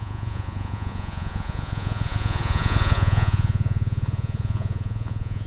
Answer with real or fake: fake